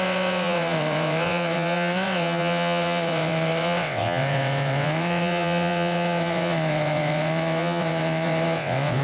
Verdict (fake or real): fake